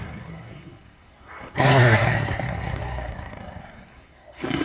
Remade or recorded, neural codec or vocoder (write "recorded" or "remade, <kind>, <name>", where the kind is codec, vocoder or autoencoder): remade, codec, SNAC